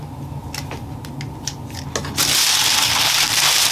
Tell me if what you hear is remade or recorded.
recorded